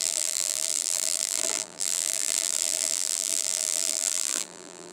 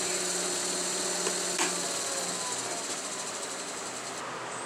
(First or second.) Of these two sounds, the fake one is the first